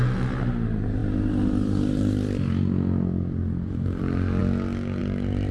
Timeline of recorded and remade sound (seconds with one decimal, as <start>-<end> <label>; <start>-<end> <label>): 0.0-5.5 recorded